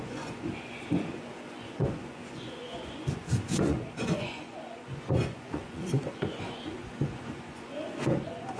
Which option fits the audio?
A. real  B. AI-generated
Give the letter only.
B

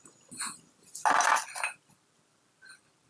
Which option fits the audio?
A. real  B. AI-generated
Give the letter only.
A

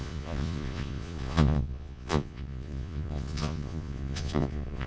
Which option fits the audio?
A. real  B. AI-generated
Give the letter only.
B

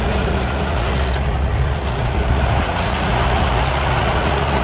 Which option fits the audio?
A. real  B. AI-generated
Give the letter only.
B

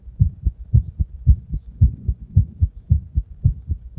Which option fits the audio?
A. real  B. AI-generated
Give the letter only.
B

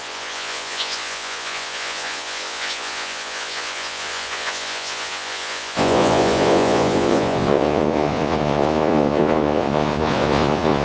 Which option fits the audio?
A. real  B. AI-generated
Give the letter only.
B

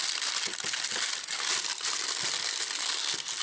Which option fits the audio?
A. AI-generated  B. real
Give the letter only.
B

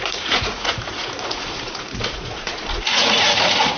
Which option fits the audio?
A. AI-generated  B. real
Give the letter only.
A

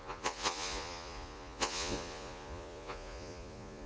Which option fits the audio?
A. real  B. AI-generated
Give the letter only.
B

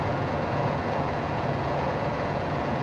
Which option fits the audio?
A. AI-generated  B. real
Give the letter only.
A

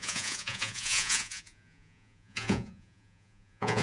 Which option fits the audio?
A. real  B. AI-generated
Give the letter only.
B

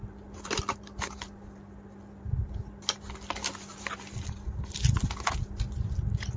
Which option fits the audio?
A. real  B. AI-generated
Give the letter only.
A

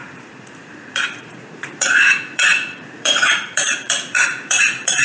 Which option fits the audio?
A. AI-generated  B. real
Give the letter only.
A